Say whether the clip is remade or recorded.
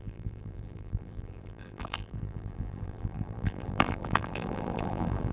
remade